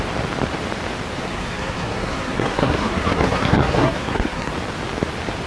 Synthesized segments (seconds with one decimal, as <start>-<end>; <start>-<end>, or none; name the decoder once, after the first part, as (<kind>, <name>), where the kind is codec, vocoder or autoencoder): 1.2-4.5 (codec, SNAC)

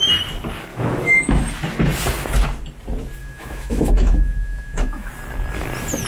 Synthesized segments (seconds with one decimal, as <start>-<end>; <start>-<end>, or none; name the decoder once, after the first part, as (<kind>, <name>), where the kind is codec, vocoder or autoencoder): 0.7-1.4 (autoencoder, DAC-VAE); 3.2-5.1

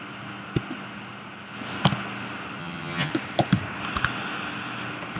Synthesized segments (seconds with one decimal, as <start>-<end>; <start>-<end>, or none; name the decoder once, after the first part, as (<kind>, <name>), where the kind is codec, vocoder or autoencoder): 2.6-3.1 (vocoder, HiFi-GAN)

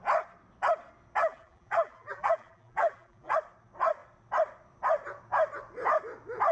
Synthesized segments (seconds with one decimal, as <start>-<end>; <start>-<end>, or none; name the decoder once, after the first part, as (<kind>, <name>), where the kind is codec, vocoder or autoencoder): 1.2-3.3 (vocoder, BigVGAN v2)